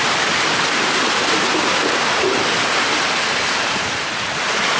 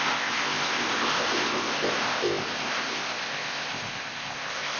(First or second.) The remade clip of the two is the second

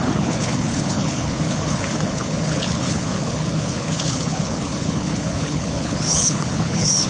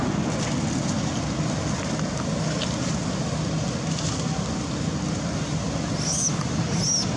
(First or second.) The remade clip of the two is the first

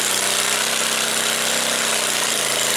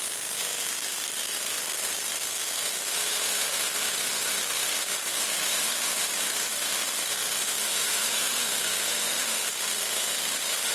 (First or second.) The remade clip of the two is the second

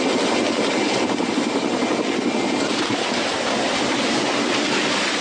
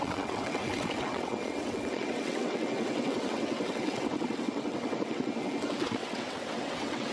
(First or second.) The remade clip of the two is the second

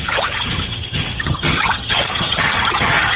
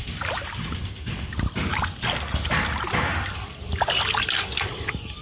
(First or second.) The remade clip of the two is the first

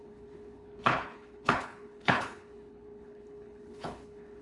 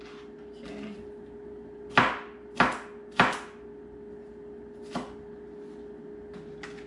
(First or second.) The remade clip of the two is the first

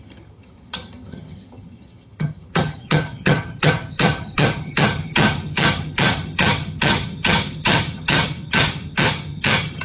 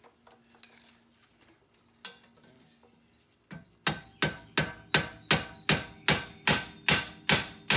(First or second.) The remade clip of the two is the first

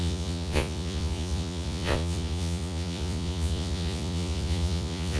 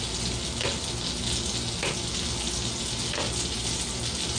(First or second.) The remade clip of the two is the first